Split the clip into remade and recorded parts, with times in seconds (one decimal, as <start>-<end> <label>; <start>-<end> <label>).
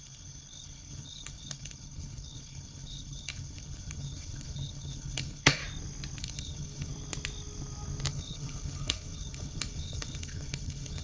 0.0-5.6 remade; 5.6-6.2 recorded; 6.2-6.9 remade; 6.9-8.1 recorded; 8.1-11.0 remade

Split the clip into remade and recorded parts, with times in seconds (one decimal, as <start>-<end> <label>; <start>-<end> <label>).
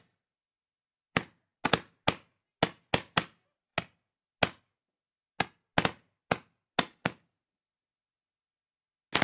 0.0-9.2 recorded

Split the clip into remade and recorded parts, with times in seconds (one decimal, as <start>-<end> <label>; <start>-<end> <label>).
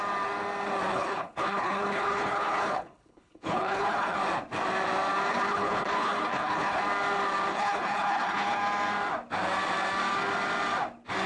0.0-0.9 recorded; 0.9-4.2 remade; 4.2-5.3 recorded; 5.3-6.8 remade; 6.8-7.5 recorded; 7.5-8.6 remade; 8.6-11.3 recorded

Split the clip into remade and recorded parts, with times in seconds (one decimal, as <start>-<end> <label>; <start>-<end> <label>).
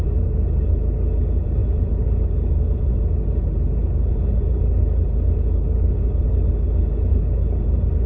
0.0-7.1 recorded; 7.1-7.6 remade; 7.6-8.1 recorded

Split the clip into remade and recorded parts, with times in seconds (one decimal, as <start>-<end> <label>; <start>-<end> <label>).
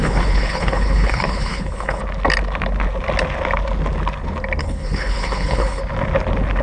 0.0-2.0 remade; 2.0-4.6 recorded; 4.6-5.8 remade; 5.8-6.6 recorded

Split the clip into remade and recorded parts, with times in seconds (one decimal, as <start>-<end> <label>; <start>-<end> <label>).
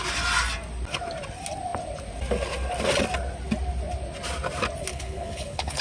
0.0-4.9 recorded; 4.9-5.8 remade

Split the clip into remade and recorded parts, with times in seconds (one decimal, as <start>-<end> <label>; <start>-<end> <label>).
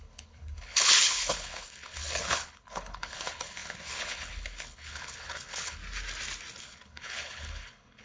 0.0-5.8 remade; 5.8-6.6 recorded; 6.6-8.0 remade